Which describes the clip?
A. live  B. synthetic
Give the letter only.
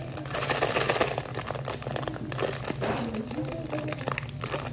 A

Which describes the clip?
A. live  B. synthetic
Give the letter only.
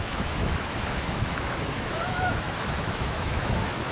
B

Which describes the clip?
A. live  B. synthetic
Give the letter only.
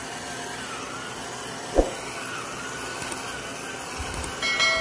A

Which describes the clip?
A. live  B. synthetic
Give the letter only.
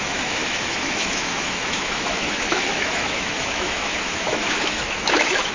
B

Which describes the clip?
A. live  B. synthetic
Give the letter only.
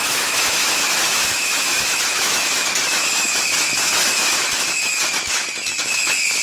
B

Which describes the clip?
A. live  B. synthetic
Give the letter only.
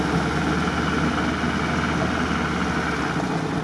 A